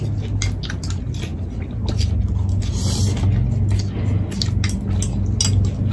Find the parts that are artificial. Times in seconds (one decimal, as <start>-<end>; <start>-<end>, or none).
none